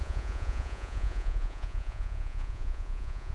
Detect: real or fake fake